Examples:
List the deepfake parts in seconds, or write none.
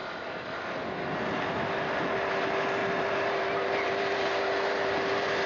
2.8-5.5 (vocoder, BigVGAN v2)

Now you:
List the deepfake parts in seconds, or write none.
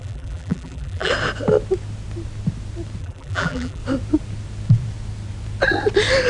0.0-1.1 (vocoder, BigVGAN v2); 3.0-3.8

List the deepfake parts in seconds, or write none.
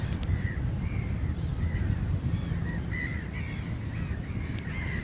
none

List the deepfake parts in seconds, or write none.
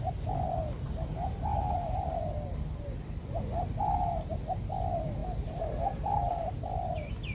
1.5-2.1 (vocoder, BigVGAN v2); 5.2-6.6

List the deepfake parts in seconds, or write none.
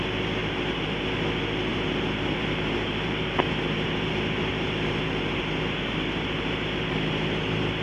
0.4-1.0 (vocoder, BigVGAN v2); 1.7-4.1; 4.5-5.4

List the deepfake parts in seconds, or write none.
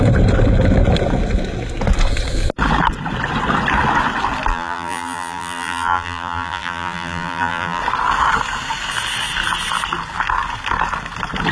4.5-7.8 (vocoder, BigVGAN v2)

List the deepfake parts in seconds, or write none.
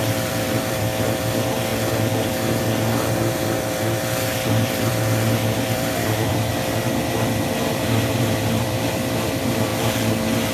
0.0-1.7 (vocoder, BigVGAN v2); 2.2-6.5; 7.5-9.7